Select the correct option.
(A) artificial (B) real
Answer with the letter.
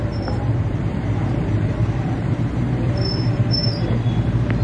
A